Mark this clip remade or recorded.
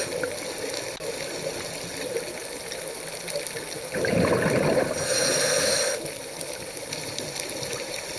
recorded